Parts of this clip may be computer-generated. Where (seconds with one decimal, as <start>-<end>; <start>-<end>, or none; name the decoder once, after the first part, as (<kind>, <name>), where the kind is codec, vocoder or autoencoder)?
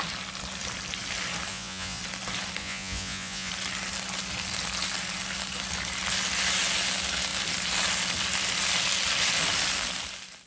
1.5-2.0 (vocoder, Vocos); 2.6-3.5